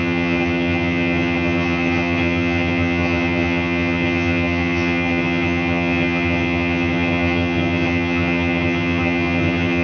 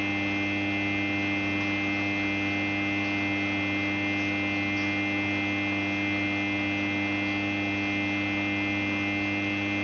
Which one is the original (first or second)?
second